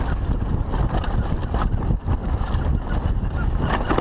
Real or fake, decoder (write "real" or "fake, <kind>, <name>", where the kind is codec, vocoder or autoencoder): real